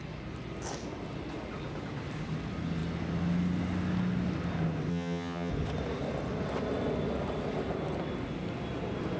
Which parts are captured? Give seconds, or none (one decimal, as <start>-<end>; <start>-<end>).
0.0-4.9; 5.5-9.2